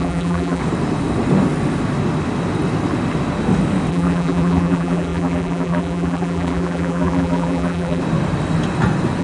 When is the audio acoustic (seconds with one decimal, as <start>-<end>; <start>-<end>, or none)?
0.6-3.9; 8.0-9.2